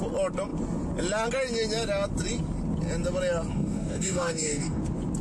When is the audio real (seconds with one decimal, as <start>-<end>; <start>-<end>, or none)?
0.0-3.5; 4.8-5.2

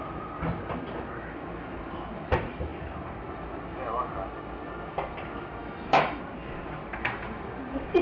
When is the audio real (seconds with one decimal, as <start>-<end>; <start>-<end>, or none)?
0.0-5.6; 6.2-8.0

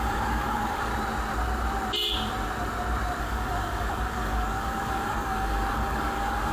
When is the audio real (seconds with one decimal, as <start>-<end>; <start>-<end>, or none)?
0.9-3.2